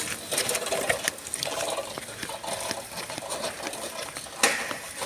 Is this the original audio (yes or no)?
yes